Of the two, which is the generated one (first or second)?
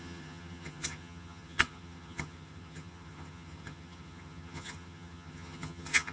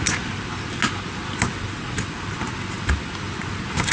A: first